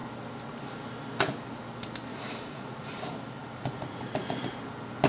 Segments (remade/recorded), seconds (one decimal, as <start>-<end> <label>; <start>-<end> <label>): 0.0-2.1 recorded; 2.1-2.9 remade; 2.9-3.4 recorded; 3.4-4.6 remade; 4.6-5.1 recorded